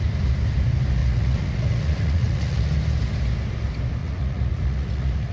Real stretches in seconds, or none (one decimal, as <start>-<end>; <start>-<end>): 0.0-1.0; 2.7-4.0